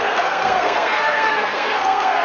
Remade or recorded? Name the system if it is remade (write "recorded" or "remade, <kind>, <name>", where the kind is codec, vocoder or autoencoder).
remade, codec, SNAC